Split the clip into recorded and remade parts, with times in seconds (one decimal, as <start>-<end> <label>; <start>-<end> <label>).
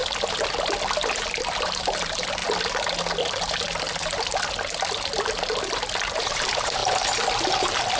0.0-1.1 recorded; 1.1-2.4 remade; 2.4-6.2 recorded; 6.2-6.8 remade; 6.8-7.6 recorded; 7.6-8.0 remade